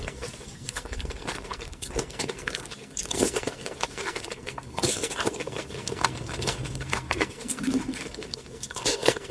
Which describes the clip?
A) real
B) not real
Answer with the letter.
B